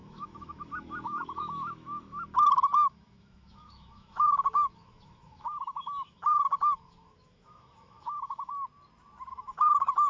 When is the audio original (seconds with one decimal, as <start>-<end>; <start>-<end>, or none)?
8.5-9.3